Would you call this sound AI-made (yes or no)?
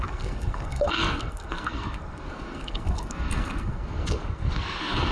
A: yes